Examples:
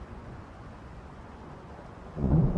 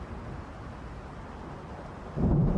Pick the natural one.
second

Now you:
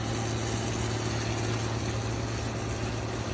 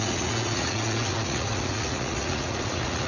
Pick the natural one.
first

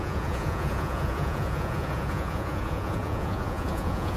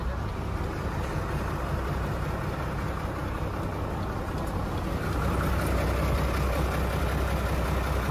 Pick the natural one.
second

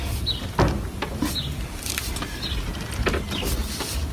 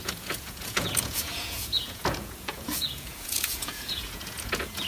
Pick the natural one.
first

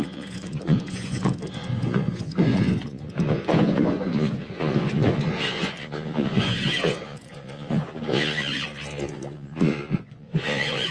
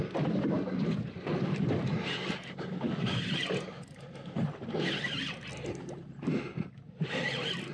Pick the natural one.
second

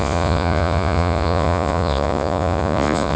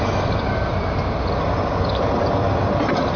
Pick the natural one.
second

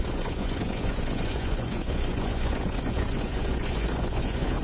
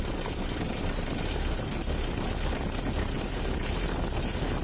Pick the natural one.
second